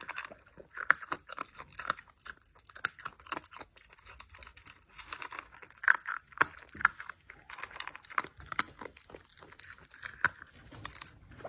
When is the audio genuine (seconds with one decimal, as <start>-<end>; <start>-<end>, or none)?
0.0-9.3; 10.8-11.5